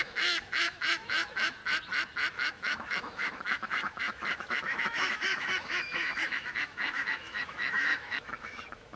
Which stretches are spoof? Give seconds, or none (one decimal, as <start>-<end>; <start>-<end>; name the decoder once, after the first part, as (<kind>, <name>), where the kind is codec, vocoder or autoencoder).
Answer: 0.0-1.6 (autoencoder, DAC-VAE); 2.3-9.0